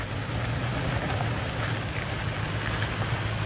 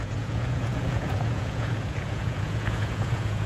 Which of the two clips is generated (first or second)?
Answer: second